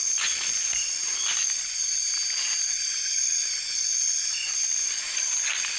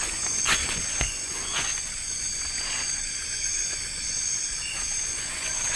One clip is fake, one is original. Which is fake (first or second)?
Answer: second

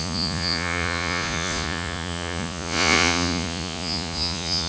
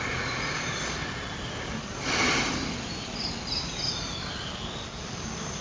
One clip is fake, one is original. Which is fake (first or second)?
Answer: first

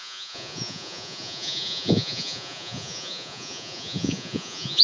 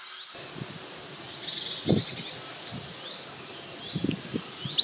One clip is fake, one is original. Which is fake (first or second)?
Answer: first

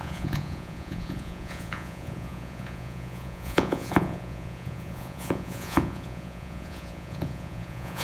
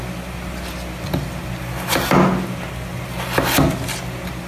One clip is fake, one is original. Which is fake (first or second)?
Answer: first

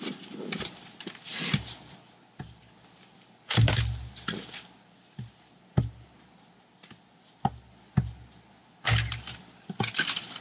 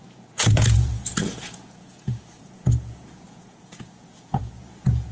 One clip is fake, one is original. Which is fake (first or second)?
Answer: second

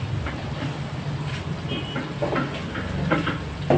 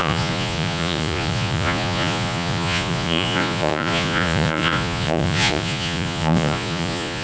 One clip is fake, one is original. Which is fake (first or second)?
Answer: second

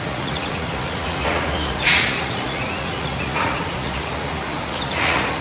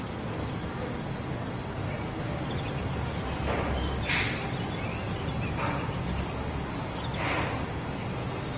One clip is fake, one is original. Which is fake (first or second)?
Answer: first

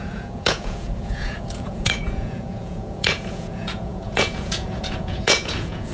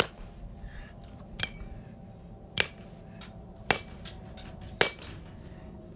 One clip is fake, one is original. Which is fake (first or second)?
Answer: first